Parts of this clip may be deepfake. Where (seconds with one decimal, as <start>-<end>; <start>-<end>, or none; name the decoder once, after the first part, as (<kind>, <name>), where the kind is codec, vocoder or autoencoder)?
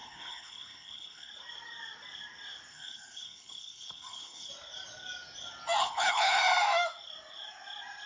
0.0-1.3 (codec, HILCodec); 2.7-4.5; 5.8-6.4